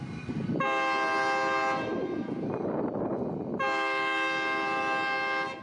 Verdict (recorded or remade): recorded